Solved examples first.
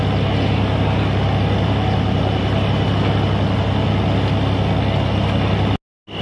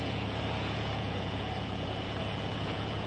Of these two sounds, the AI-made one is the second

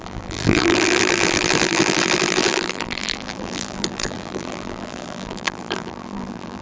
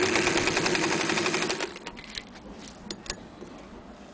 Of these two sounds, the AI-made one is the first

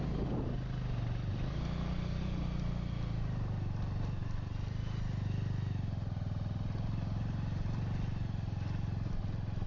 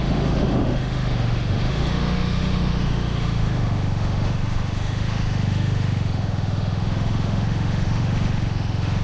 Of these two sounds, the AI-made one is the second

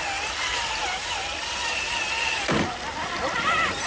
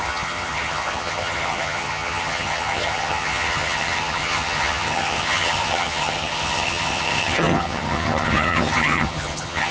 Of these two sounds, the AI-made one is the second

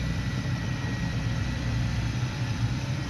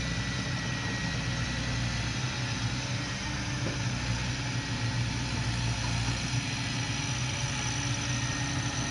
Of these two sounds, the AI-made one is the first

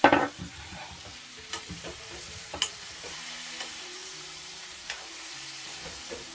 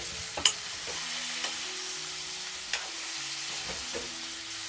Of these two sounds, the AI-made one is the first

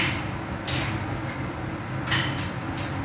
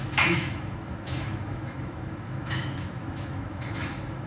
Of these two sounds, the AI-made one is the second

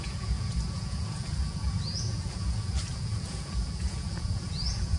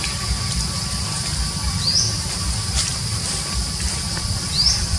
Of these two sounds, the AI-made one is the first